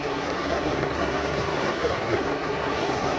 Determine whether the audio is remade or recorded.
remade